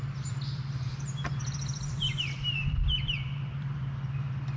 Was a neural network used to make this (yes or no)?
yes